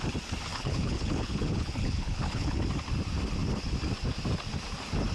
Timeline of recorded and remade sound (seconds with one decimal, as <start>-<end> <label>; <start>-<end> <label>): 0.0-0.5 recorded; 0.5-2.6 remade; 2.6-5.1 recorded